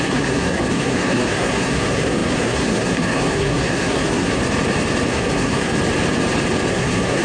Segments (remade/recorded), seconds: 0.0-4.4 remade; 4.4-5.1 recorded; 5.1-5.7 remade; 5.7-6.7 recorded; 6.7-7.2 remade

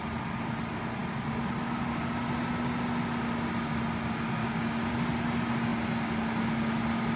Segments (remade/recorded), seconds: 0.0-4.4 recorded; 4.4-4.9 remade; 4.9-7.2 recorded

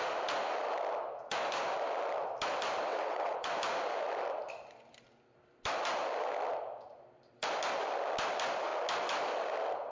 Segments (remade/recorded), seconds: 0.0-2.9 recorded; 2.9-3.5 remade; 3.5-9.9 recorded